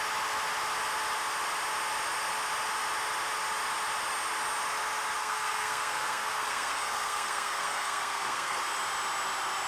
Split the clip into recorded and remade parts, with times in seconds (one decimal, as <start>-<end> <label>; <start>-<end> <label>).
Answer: 0.0-5.2 recorded; 5.2-8.6 remade; 8.6-9.7 recorded